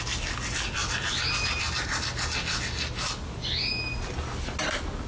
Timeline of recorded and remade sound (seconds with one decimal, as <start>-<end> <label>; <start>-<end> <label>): 0.0-5.1 recorded